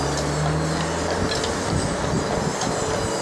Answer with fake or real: real